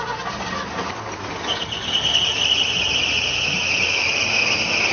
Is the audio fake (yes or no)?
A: no